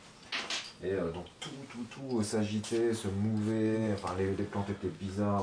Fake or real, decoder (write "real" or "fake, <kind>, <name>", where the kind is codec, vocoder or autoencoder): real